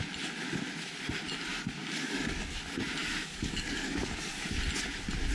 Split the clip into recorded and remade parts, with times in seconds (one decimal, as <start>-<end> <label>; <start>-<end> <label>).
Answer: 0.0-1.5 recorded; 1.5-2.6 remade; 2.6-3.0 recorded; 3.0-4.6 remade; 4.6-5.3 recorded